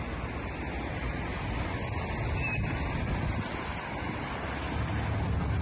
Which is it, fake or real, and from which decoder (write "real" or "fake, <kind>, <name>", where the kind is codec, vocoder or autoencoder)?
real